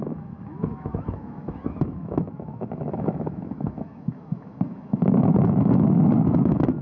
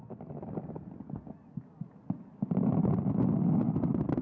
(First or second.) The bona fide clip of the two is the second